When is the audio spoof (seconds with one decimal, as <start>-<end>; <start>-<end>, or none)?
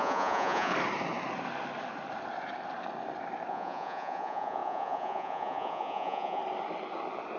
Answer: 0.0-0.7; 3.5-6.4